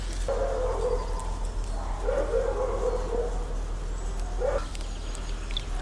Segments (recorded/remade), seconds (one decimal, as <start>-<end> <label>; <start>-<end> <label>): 0.0-5.8 recorded